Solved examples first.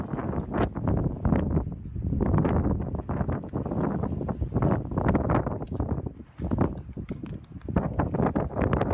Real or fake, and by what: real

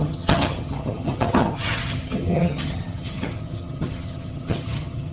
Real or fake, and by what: fake, vocoder, HiFi-GAN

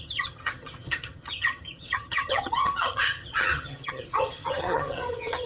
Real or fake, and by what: fake, vocoder, HiFi-GAN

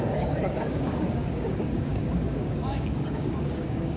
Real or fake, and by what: fake, codec, DAC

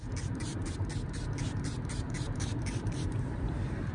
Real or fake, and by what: fake, vocoder, BigVGAN v2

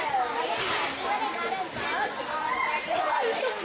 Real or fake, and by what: real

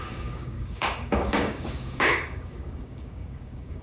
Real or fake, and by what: fake, codec, DAC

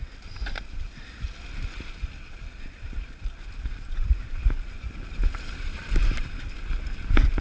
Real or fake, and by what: real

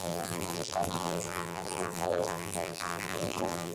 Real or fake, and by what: fake, vocoder, BigVGAN v2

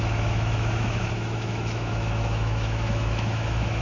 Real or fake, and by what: fake, autoencoder, DAC-VAE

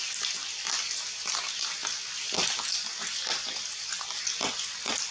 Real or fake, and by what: real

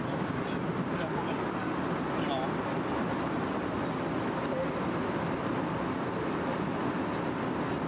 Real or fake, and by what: real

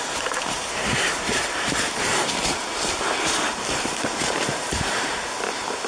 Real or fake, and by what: fake, vocoder, BigVGAN v2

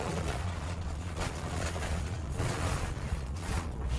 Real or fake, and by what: fake, vocoder, Vocos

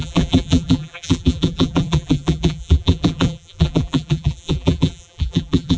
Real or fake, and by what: fake, vocoder, BigVGAN v2